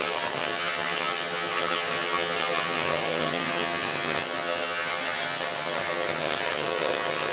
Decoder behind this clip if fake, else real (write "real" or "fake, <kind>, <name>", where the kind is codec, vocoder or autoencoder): fake, vocoder, HiFi-GAN